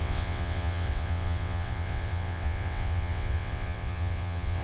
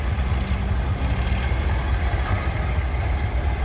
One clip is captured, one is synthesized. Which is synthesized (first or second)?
first